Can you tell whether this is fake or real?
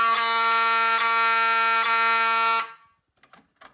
real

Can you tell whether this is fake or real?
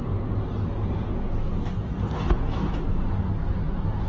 real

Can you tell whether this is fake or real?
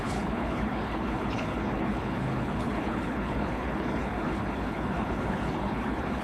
fake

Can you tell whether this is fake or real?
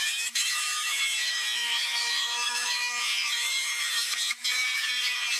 fake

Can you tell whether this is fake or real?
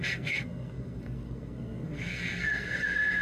fake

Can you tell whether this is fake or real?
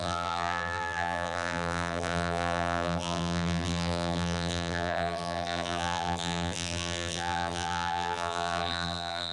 fake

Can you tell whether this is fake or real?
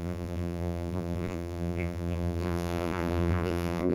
fake